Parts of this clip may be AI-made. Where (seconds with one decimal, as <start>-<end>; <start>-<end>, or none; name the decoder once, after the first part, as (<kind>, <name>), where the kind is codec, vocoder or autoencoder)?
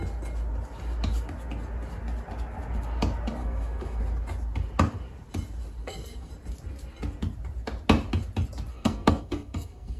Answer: 3.4-4.0 (codec, SNAC); 5.8-6.3; 8.7-10.0